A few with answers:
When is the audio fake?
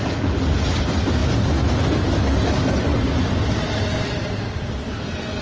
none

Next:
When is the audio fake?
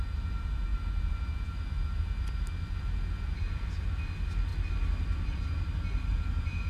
none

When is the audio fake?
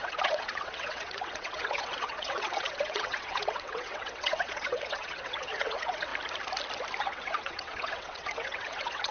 0.0-6.1 (vocoder, WaveNeXt); 7.0-9.1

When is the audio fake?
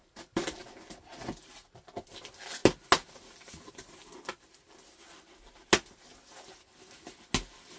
none